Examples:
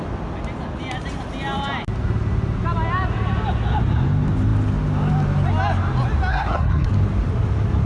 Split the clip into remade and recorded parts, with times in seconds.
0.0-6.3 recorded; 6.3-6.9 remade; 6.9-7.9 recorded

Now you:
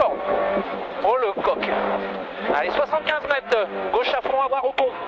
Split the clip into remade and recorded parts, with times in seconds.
0.0-2.9 recorded; 2.9-3.5 remade; 3.5-4.3 recorded; 4.3-5.1 remade

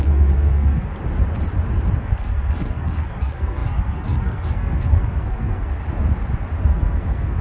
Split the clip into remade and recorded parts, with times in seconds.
0.0-0.9 remade; 0.9-2.0 recorded; 2.0-5.8 remade; 5.8-6.7 recorded; 6.7-7.4 remade